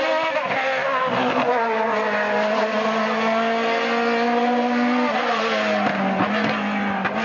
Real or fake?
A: real